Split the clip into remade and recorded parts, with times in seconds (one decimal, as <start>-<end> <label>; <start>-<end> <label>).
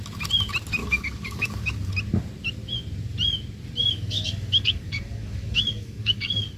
0.0-0.8 recorded; 0.8-1.9 remade; 1.9-3.8 recorded; 3.8-6.6 remade